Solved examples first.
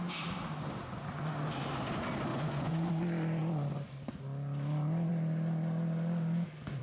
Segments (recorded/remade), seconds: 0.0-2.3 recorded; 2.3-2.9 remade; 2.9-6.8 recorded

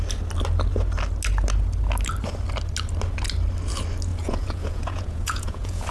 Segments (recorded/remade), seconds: 0.0-4.1 recorded; 4.1-5.9 remade

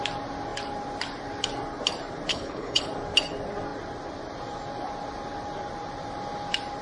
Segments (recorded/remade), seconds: 0.0-2.3 recorded; 2.3-2.9 remade; 2.9-6.8 recorded

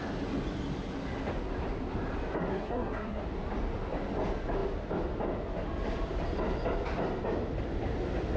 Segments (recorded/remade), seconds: 0.0-2.5 recorded; 2.5-3.2 remade; 3.2-8.4 recorded

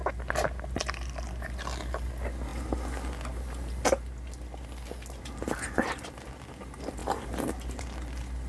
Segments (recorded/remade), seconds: 0.0-8.5 recorded

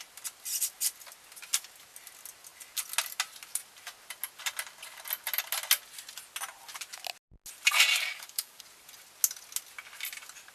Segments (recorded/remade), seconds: 0.0-7.9 recorded; 7.9-8.6 remade; 8.6-10.5 recorded

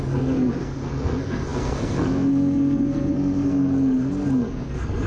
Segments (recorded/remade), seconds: 0.0-5.1 remade

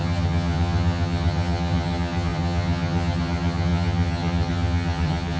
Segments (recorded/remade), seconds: 0.0-5.4 remade